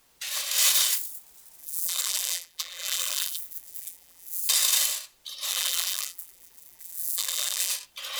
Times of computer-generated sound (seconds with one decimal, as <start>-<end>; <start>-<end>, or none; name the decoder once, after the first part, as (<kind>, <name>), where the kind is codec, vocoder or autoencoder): 1.6-4.4 (vocoder, BigVGAN v2); 5.5-7.7

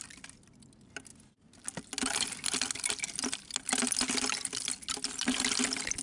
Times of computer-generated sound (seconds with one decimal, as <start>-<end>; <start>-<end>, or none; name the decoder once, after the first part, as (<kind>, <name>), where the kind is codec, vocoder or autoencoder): none